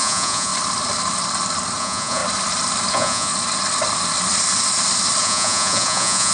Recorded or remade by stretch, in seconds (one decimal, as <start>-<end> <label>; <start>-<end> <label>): 0.0-0.5 remade; 0.5-1.8 recorded; 1.8-2.2 remade; 2.2-2.9 recorded; 2.9-3.3 remade; 3.3-5.2 recorded; 5.2-6.3 remade